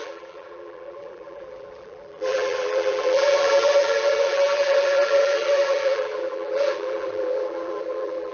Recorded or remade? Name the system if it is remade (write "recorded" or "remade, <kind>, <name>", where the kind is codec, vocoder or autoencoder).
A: remade, vocoder, BigVGAN v2